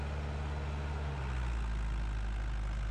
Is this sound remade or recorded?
recorded